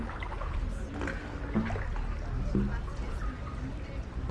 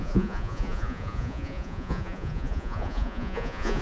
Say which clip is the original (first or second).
first